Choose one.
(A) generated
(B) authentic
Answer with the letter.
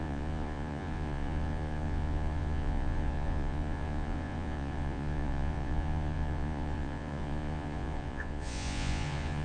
A